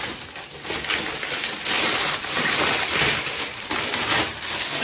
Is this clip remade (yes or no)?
no